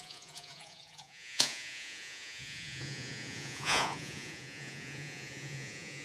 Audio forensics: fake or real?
fake